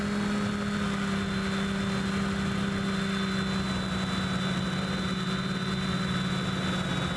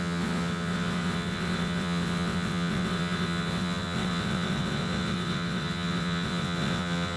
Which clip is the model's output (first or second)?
second